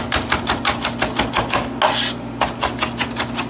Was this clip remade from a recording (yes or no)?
no